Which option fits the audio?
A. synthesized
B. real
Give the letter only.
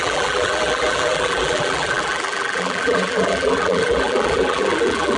A